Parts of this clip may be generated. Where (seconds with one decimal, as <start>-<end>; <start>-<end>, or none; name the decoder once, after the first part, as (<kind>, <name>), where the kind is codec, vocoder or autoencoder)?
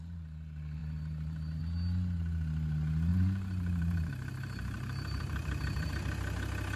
0.8-1.6 (vocoder, BigVGAN v2); 3.1-5.9